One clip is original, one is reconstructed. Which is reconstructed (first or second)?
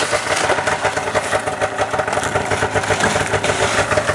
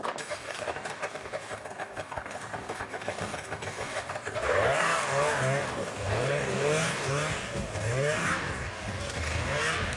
second